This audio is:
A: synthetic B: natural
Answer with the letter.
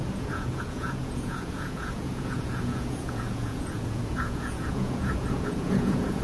A